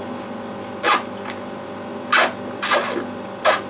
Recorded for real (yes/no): yes